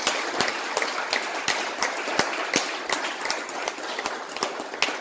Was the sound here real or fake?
real